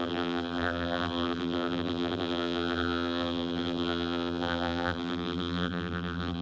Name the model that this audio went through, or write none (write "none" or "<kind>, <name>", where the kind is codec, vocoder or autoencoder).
vocoder, BigVGAN v2